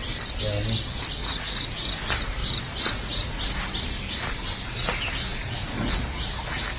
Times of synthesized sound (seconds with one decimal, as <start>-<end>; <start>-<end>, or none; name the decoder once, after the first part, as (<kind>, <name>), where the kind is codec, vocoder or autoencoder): 1.2-2.0 (vocoder, Vocos); 2.4-3.3; 5.3-5.9